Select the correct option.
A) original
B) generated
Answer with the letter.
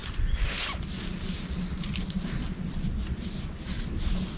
A